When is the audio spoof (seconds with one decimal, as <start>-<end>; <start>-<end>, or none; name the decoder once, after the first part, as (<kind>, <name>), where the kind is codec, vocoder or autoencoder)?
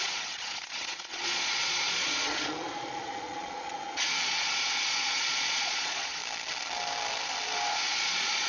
0.0-6.2 (vocoder, Vocos); 7.7-8.5